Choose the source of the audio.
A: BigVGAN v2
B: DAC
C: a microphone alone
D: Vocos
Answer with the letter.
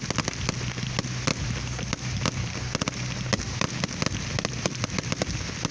C